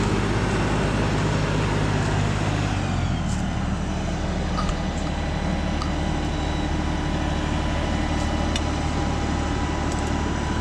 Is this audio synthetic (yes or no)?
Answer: no